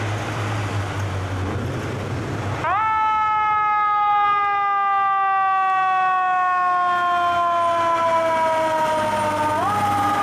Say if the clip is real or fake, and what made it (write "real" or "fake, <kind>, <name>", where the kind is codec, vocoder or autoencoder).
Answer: real